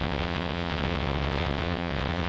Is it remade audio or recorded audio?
remade